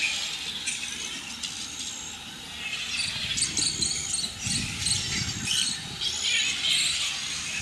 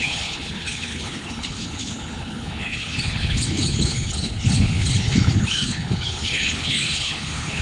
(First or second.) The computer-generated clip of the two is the second